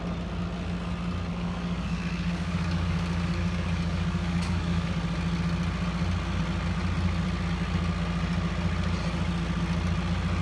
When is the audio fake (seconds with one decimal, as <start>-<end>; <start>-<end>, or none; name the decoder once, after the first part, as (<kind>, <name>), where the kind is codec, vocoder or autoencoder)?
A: 1.3-4.9 (codec, DAC)